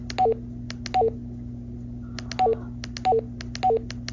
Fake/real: real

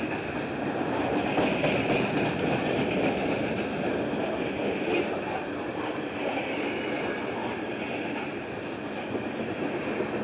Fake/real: real